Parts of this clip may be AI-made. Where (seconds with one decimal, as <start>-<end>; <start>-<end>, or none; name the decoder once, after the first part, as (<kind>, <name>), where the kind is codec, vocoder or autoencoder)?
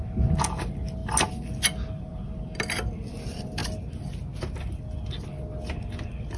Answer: none